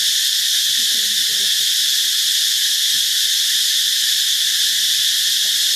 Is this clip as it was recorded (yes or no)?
yes